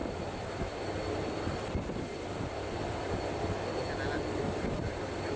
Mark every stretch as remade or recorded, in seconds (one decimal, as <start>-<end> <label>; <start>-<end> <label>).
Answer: 0.0-3.2 remade; 3.2-5.4 recorded